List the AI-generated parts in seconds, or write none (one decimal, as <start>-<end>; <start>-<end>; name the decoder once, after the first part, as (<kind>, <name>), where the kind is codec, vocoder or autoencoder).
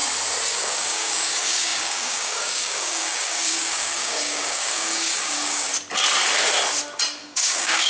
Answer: 0.5-5.7 (codec, DAC); 7.2-7.9